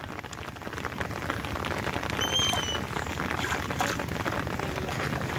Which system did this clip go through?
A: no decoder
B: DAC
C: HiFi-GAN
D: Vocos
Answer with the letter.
A